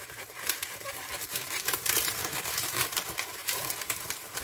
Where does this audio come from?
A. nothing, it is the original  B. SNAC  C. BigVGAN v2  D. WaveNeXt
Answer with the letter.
C